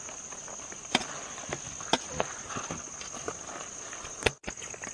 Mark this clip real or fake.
real